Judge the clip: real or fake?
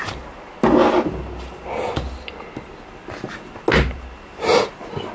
real